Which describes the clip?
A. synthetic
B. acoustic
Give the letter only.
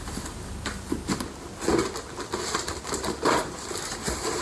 B